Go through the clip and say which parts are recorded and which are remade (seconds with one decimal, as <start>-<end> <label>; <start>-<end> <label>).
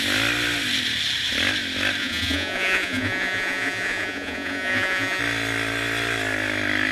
0.0-2.0 recorded; 2.0-5.2 remade; 5.2-6.9 recorded